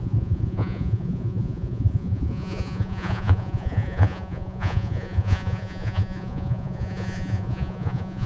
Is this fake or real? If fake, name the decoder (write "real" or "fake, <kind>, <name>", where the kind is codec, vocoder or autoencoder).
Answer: fake, vocoder, Vocos